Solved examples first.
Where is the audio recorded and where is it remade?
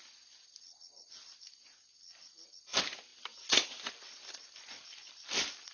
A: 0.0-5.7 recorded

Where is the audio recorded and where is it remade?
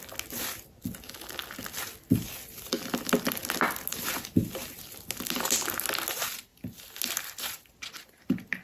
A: 0.0-8.6 recorded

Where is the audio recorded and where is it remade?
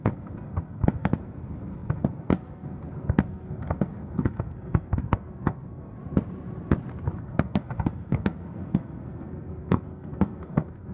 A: 0.0-6.0 remade; 6.0-7.2 recorded; 7.2-10.9 remade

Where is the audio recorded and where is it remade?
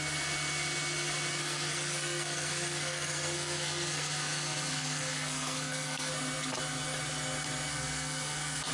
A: 0.0-1.3 recorded; 1.3-6.1 remade; 6.1-7.7 recorded; 7.7-8.7 remade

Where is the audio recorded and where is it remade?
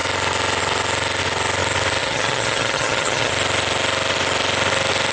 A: 0.0-2.0 recorded; 2.0-3.3 remade; 3.3-5.1 recorded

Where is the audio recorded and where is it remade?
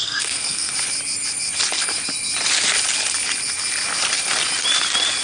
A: 0.0-0.7 remade; 0.7-5.2 recorded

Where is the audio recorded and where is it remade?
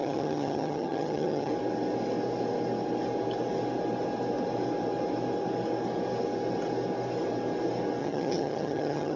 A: 0.0-1.5 remade; 1.5-8.0 recorded; 8.0-9.2 remade